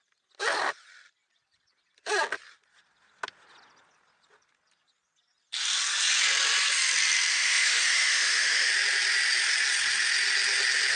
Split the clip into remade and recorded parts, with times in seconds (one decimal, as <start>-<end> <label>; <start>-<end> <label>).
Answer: 0.0-7.3 recorded; 7.3-8.7 remade; 8.7-11.0 recorded